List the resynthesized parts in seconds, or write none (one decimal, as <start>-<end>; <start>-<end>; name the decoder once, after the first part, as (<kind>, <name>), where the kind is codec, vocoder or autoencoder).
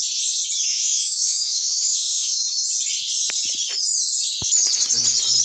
0.7-2.4 (autoencoder, DAC-VAE)